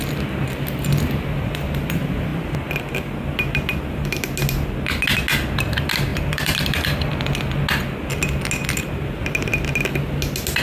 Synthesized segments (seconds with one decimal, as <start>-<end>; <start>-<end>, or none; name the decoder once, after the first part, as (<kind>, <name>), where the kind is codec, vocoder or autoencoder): 6.1-7.2 (vocoder, BigVGAN v2)

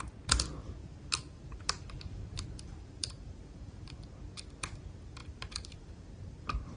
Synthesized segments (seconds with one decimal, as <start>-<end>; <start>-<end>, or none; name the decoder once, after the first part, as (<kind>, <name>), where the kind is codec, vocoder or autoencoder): 0.8-4.0 (vocoder, BigVGAN v2); 5.2-6.8

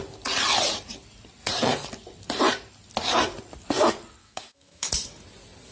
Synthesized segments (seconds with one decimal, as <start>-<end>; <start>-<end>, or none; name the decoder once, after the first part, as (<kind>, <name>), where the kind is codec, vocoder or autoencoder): 4.2-4.9 (autoencoder, DAC-VAE)

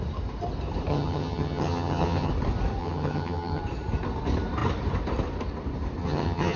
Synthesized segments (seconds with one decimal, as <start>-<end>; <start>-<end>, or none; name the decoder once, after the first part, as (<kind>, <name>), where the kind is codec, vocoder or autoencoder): 0.9-2.3 (vocoder, HiFi-GAN); 2.8-3.6; 6.0-6.6